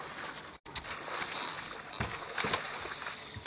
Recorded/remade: recorded